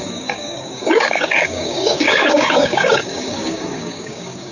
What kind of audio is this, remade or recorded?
remade